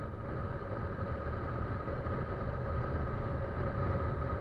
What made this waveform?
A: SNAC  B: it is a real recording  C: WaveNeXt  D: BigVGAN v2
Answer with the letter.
B